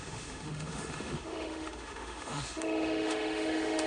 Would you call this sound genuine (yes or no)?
no